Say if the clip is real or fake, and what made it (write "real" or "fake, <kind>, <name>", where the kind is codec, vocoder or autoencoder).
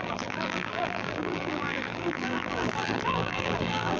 fake, vocoder, BigVGAN v2